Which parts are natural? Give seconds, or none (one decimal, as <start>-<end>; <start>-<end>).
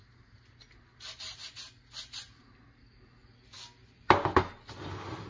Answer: 0.0-5.3